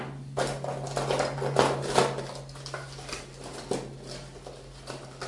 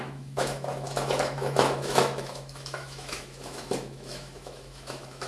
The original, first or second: first